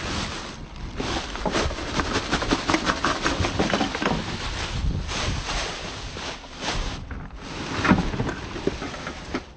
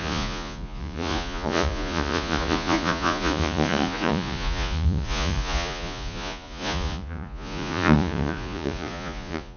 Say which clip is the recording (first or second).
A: first